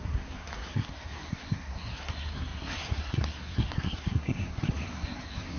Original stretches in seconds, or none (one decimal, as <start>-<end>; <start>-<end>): none